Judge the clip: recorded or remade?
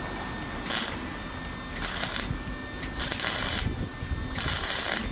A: recorded